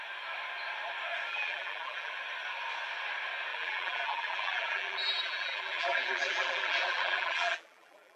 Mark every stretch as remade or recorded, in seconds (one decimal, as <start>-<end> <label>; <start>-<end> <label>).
0.0-1.3 recorded; 1.3-2.1 remade; 2.1-3.5 recorded; 3.5-8.2 remade